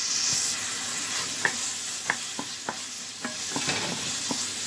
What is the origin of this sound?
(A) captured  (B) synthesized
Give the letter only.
A